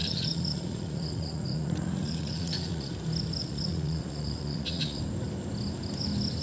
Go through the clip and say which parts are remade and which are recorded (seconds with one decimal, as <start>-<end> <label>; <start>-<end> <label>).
0.0-2.9 remade; 2.9-3.4 recorded; 3.4-5.0 remade; 5.0-6.4 recorded